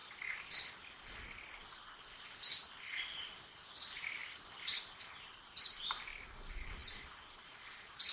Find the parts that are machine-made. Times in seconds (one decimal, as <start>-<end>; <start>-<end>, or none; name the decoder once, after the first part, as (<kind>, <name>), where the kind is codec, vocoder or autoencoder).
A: 4.2-5.1 (vocoder, BigVGAN v2)